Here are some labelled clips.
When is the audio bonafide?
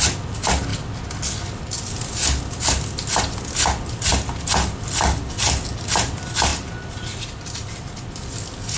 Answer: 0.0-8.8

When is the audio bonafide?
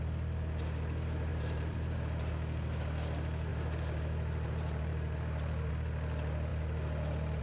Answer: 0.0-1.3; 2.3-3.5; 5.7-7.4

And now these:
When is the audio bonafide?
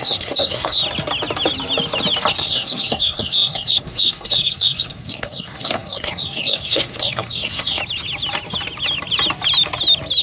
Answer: 0.8-2.3; 7.8-10.2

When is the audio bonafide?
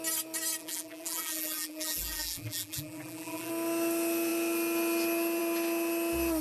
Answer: 0.0-0.6; 3.5-6.4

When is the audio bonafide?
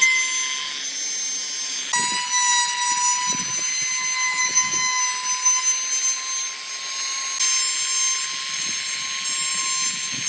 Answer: 0.0-4.4; 5.0-10.3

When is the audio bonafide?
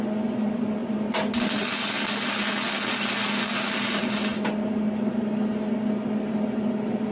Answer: 0.0-7.1